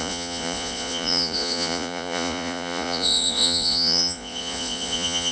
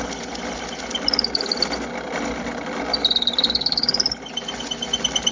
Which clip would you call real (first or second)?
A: second